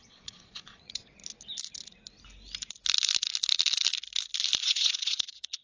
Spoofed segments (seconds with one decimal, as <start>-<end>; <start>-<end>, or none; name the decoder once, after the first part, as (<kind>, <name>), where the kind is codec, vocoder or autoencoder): 0.0-1.2 (vocoder, Vocos); 4.6-5.6